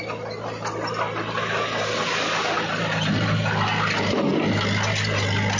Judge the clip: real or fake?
real